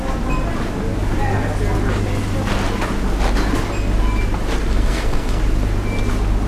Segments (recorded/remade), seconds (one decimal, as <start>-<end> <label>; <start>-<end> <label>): 0.0-4.7 recorded; 4.7-5.4 remade; 5.4-6.5 recorded